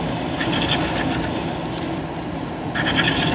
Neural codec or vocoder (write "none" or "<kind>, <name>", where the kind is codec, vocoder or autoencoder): none